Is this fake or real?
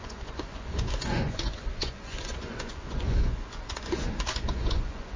fake